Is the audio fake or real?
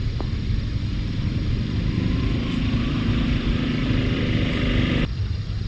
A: fake